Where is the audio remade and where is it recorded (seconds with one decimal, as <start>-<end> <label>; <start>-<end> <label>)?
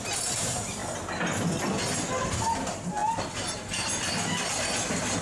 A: 0.0-0.8 remade; 0.8-2.2 recorded; 2.2-5.2 remade